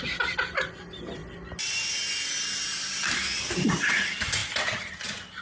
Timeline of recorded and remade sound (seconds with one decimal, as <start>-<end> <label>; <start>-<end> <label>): 0.0-5.4 recorded